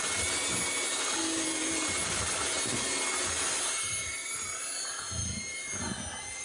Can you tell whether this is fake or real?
real